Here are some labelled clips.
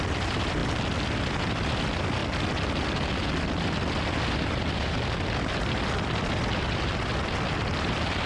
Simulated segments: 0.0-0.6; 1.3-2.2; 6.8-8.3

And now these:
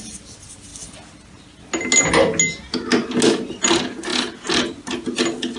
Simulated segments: none

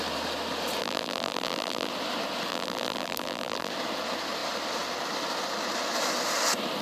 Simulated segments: 0.8-1.9; 2.5-3.7

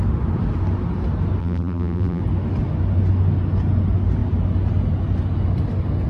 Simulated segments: 1.4-2.2